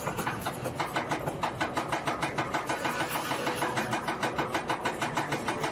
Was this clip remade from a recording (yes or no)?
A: no